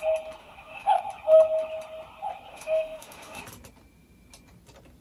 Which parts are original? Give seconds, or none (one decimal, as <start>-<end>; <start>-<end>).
0.0-0.4; 1.0-2.5; 3.4-5.0